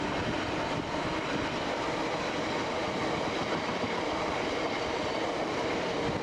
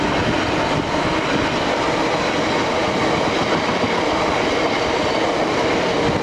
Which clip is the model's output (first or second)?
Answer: first